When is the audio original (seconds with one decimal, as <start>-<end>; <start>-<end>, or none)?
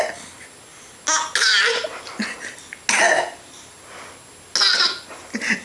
0.0-5.6